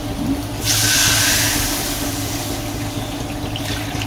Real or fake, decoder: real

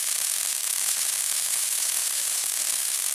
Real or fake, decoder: fake, autoencoder, DAC-VAE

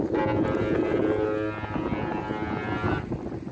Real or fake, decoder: real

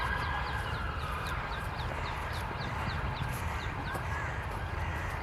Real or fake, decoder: fake, vocoder, BigVGAN v2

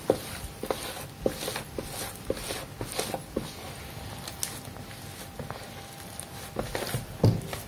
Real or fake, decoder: real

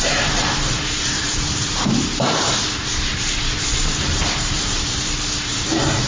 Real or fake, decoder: fake, vocoder, BigVGAN v2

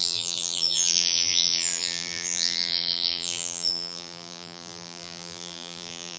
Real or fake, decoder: fake, vocoder, BigVGAN v2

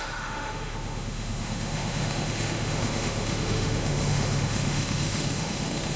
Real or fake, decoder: fake, autoencoder, DAC-VAE